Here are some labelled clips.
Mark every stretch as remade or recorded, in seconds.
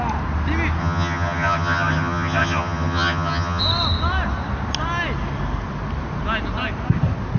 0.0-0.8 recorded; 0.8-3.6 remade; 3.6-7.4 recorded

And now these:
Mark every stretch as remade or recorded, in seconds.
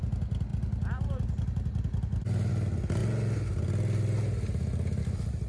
0.0-5.5 recorded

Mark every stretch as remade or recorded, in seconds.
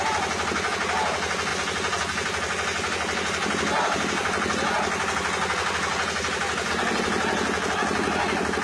0.0-8.6 recorded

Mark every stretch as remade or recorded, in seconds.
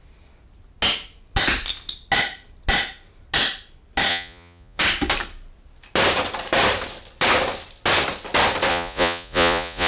0.0-4.1 recorded; 4.1-4.8 remade; 4.8-8.7 recorded; 8.7-9.9 remade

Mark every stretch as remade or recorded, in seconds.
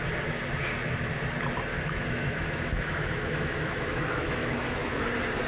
0.0-1.7 recorded; 1.7-5.0 remade; 5.0-5.5 recorded